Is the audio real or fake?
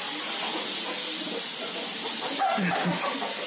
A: real